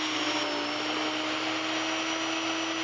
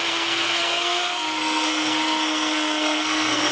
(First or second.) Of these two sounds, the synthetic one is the second